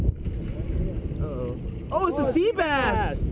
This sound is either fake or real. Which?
real